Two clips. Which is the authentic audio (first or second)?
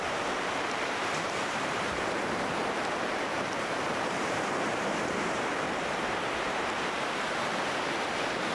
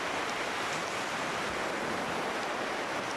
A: second